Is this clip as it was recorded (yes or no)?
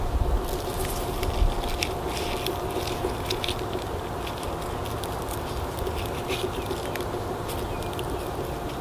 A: yes